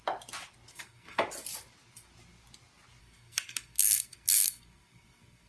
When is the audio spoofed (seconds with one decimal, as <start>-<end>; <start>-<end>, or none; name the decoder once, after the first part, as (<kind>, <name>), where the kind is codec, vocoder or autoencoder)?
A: 0.7-1.2 (codec, SNAC); 3.0-5.5